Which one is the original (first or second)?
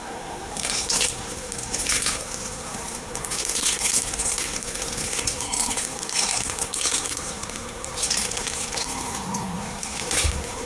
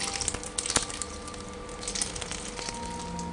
second